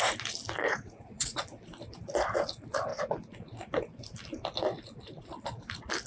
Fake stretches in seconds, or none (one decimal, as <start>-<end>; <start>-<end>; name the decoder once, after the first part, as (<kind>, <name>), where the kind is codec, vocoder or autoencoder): 0.6-1.4 (vocoder, Vocos)